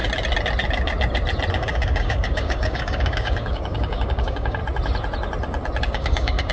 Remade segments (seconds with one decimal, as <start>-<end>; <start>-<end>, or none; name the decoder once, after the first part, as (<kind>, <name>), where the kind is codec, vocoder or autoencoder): 1.5-4.6 (codec, DAC); 5.8-6.5